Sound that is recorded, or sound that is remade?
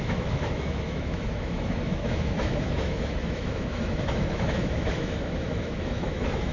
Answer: remade